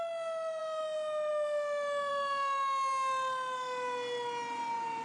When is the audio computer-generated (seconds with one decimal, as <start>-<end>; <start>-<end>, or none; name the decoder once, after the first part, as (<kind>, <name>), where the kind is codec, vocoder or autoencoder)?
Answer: none

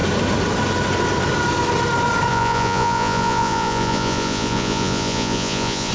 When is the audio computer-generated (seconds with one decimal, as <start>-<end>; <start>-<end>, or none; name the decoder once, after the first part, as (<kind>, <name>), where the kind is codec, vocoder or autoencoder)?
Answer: 2.3-5.9 (vocoder, Vocos)

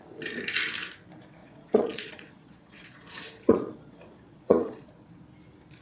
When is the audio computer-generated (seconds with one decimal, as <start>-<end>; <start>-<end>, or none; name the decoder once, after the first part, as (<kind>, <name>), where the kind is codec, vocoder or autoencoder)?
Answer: 1.4-4.9 (vocoder, Vocos)